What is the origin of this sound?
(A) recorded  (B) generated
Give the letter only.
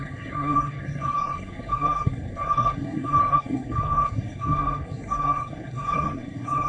B